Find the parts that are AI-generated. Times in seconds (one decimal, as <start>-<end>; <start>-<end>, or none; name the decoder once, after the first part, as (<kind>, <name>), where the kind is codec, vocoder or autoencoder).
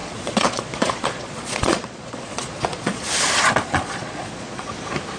0.0-3.1 (vocoder, Vocos); 3.6-4.7